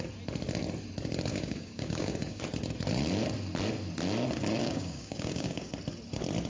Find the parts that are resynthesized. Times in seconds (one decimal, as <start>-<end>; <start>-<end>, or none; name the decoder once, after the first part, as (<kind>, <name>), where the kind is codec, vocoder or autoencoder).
1.3-2.4 (codec, DAC); 4.6-5.7

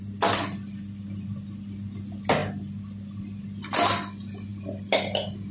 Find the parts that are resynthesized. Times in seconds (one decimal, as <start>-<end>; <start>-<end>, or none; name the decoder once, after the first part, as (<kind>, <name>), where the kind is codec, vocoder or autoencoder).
none

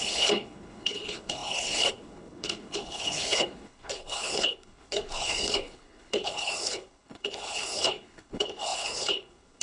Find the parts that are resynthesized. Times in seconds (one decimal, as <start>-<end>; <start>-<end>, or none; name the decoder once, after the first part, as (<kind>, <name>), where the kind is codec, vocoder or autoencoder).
0.0-9.6 (codec, HILCodec)

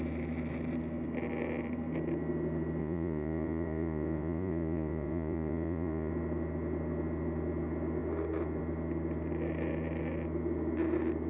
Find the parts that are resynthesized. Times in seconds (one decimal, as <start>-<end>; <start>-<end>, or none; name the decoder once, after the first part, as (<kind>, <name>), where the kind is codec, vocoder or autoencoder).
2.8-6.1 (vocoder, Vocos)

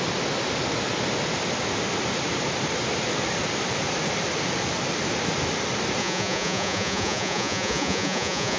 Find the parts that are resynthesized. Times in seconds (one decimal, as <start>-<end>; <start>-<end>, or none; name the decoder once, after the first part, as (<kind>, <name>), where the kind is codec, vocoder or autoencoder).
6.0-8.6 (vocoder, Vocos)